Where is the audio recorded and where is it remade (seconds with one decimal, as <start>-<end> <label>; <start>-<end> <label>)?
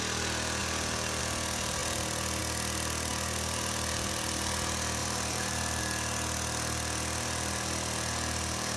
0.0-5.0 recorded; 5.0-5.8 remade; 5.8-8.8 recorded